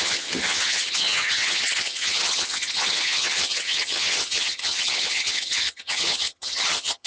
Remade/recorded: remade